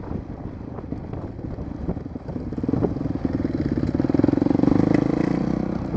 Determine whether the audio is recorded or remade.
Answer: recorded